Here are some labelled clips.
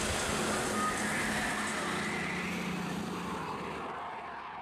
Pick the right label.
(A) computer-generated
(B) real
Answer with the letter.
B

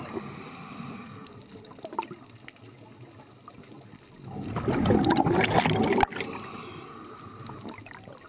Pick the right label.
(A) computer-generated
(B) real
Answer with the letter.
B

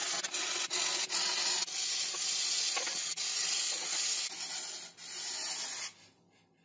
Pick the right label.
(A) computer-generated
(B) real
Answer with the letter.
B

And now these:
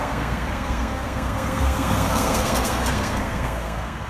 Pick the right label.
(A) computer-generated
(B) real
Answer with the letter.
A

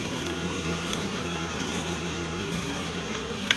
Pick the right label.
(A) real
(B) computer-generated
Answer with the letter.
B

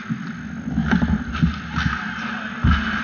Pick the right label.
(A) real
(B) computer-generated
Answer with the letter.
A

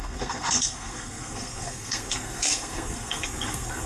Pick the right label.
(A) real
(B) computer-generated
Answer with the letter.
B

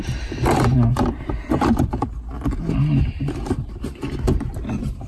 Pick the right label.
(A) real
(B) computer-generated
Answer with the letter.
A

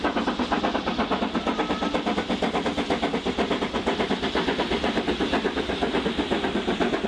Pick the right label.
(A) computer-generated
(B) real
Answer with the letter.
B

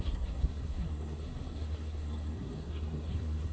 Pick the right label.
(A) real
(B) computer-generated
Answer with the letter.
B